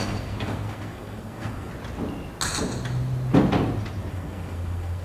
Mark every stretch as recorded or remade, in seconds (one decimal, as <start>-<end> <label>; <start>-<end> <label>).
0.0-1.7 remade; 1.7-4.1 recorded; 4.1-5.0 remade